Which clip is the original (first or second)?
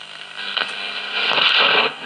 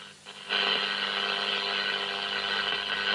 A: second